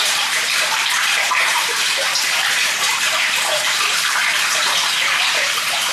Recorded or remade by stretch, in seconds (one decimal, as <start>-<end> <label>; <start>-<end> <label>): 0.0-4.2 remade; 4.2-5.2 recorded; 5.2-5.9 remade